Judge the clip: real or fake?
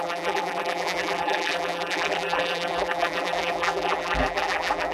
fake